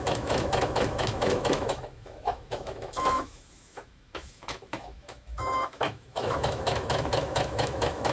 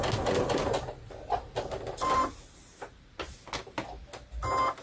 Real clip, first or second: second